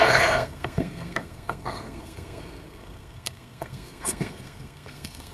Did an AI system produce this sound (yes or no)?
yes